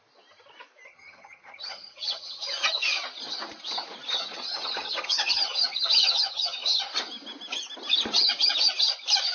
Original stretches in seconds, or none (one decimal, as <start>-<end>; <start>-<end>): 0.0-0.9; 2.8-4.1; 6.9-9.3